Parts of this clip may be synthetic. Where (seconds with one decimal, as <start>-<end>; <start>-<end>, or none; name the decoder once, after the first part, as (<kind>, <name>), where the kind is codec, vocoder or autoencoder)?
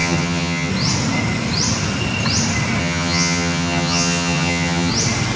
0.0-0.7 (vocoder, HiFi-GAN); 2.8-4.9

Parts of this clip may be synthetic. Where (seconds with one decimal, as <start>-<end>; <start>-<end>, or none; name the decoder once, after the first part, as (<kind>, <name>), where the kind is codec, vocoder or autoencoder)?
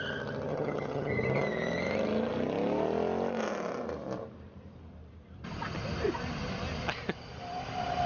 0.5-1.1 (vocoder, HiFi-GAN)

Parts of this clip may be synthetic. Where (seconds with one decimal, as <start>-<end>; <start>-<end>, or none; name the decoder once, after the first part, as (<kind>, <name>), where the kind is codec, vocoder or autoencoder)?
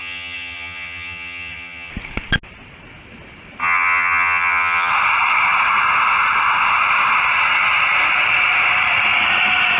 0.0-1.9 (vocoder, HiFi-GAN); 3.6-4.9